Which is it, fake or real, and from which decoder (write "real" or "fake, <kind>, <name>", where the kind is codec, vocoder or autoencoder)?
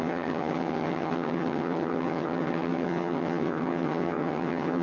fake, vocoder, HiFi-GAN